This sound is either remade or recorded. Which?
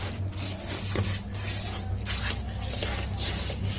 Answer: recorded